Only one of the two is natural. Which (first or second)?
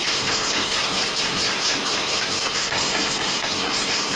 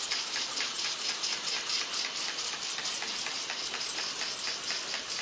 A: second